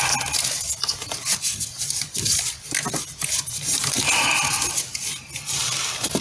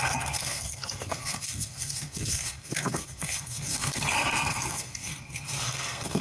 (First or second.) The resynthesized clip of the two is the second